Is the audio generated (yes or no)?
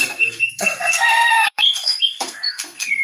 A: yes